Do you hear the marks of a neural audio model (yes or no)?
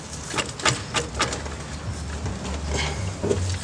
no